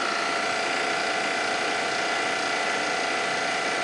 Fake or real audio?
real